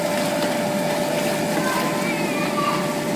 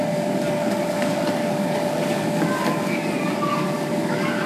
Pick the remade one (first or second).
second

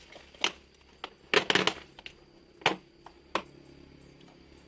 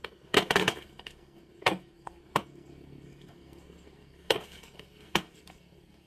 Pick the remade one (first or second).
second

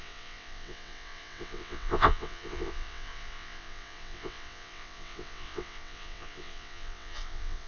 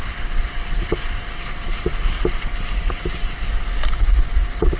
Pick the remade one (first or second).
first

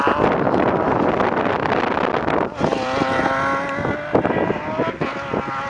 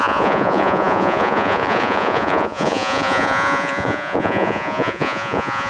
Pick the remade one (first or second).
second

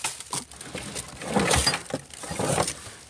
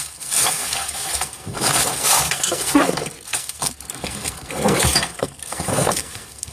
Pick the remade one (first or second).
second